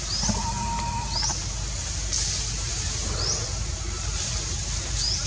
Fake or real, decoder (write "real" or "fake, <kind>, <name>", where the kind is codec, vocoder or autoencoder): real